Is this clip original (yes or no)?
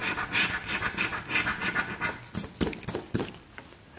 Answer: yes